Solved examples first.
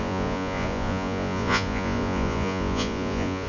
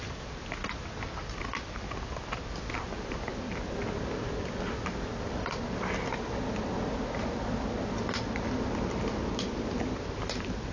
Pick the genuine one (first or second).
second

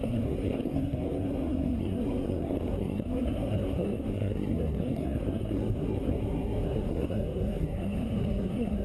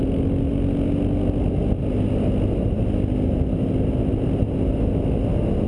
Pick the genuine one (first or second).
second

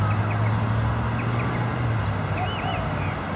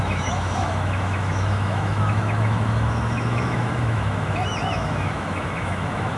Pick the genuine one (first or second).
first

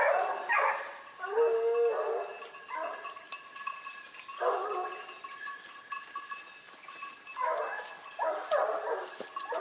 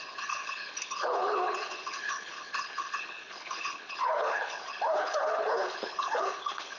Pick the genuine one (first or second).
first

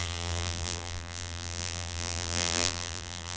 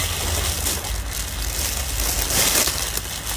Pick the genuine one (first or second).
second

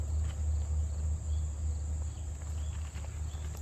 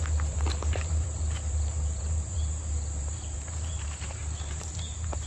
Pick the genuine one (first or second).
first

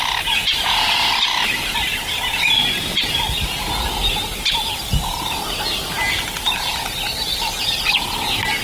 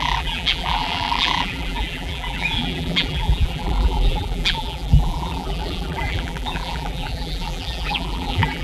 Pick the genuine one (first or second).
first